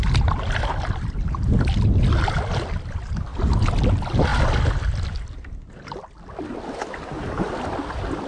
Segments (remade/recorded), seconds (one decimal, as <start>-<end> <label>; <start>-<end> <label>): 0.0-8.3 recorded